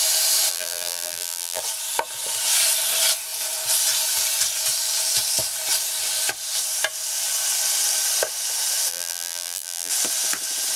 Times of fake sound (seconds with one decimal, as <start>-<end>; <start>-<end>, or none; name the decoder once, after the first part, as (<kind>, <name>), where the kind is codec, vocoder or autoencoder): 0.5-1.6 (vocoder, BigVGAN v2); 8.9-9.9